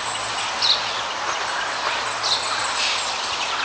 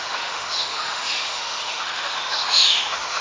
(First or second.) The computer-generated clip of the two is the second